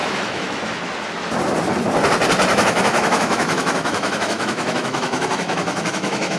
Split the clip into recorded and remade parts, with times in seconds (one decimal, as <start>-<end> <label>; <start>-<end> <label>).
0.0-0.6 remade; 0.6-2.5 recorded; 2.5-6.4 remade